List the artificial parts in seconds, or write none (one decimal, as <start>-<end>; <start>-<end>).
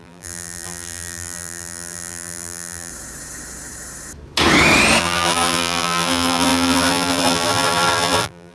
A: 0.0-2.9; 5.0-8.5